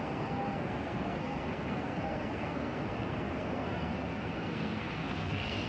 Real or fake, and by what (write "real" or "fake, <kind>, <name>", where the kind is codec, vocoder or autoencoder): fake, codec, SNAC